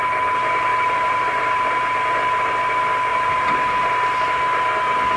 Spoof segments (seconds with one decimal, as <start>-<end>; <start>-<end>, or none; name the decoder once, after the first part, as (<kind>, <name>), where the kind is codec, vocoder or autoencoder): 0.7-1.4 (vocoder, BigVGAN v2); 3.1-4.4